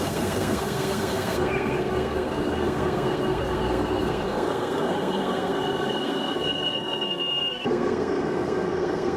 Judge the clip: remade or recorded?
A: remade